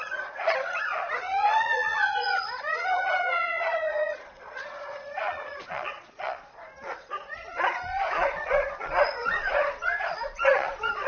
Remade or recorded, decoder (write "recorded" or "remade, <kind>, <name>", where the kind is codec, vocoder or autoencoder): remade, vocoder, Vocos